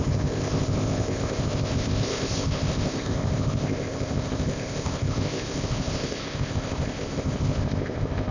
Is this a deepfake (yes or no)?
yes